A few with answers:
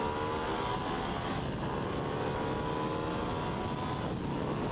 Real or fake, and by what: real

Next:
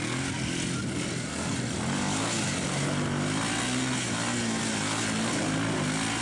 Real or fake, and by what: real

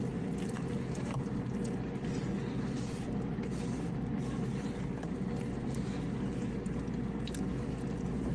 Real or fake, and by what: real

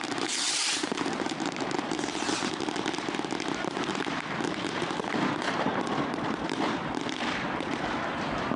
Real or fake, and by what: fake, vocoder, BigVGAN v2